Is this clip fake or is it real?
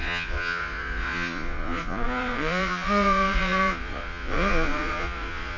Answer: fake